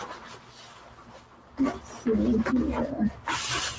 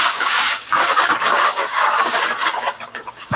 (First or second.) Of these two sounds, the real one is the first